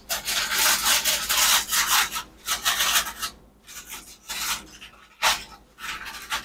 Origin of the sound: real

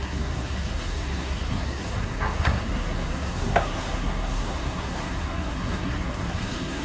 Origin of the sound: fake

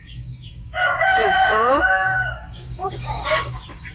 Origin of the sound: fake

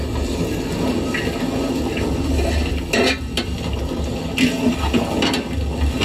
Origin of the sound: real